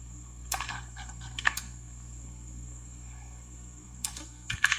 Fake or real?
fake